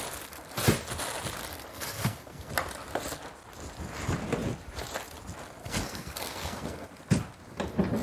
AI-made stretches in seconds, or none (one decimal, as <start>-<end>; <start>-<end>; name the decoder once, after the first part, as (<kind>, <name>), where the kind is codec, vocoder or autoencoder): 1.7-2.5 (codec, SNAC); 5.6-6.9